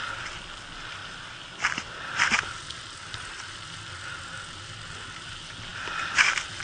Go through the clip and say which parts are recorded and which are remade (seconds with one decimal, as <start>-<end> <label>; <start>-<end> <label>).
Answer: 0.0-1.0 recorded; 1.0-3.5 remade; 3.5-6.6 recorded